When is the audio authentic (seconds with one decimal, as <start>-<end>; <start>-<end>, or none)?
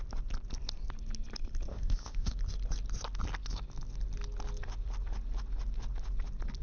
0.0-1.7; 2.3-6.6